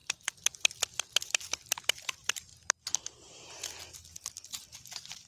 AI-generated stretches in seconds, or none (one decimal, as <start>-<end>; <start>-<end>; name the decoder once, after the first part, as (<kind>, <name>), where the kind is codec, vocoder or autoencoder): 0.0-2.5 (vocoder, BigVGAN v2); 4.0-5.3

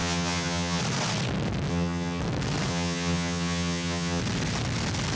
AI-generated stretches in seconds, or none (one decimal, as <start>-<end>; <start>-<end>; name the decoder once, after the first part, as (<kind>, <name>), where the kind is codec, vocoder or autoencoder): 0.0-0.8 (vocoder, HiFi-GAN); 1.7-2.2; 2.7-4.2

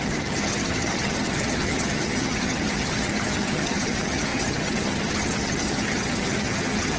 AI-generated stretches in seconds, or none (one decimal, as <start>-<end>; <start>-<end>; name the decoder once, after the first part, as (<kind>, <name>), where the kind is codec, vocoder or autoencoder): 0.0-7.0 (vocoder, HiFi-GAN)

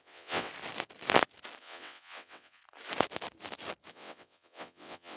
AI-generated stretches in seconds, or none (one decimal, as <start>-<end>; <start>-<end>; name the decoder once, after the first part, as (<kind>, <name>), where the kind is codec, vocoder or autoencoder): 0.0-0.5 (vocoder, WaveNeXt); 1.6-2.6; 3.9-5.2

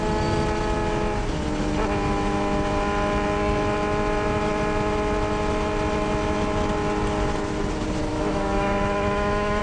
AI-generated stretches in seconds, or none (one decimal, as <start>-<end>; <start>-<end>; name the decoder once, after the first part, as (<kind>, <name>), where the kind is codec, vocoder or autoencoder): 8.1-9.6 (autoencoder, DAC-VAE)

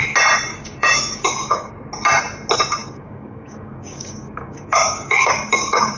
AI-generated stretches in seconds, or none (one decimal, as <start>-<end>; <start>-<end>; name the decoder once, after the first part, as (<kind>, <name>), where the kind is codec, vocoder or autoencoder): 0.5-1.7 (codec, DAC); 2.8-6.0

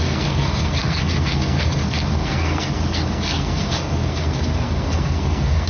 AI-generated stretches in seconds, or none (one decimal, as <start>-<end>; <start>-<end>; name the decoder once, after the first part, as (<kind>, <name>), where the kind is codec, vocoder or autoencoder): 0.0-5.7 (codec, SNAC)

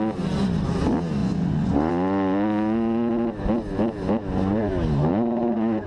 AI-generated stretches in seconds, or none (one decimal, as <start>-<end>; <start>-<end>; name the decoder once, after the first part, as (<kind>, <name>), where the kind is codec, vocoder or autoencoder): 1.2-1.9 (vocoder, Vocos); 5.1-5.9